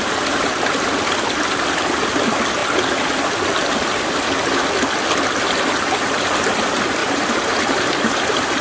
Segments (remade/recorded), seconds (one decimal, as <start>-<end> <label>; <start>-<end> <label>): 0.0-5.4 recorded; 5.4-6.3 remade; 6.3-7.0 recorded; 7.0-8.6 remade